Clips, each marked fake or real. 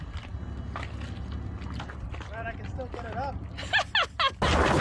real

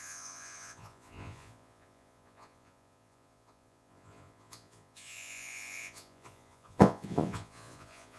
fake